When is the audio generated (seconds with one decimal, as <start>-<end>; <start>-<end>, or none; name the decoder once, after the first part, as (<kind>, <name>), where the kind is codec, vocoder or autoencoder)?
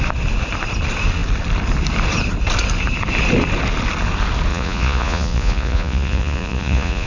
4.5-7.1 (vocoder, Vocos)